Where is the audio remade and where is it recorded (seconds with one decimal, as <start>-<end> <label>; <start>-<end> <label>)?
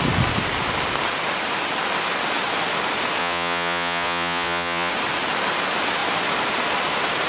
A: 0.0-3.2 recorded; 3.2-4.9 remade; 4.9-7.3 recorded